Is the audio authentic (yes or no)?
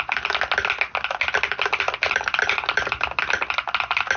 yes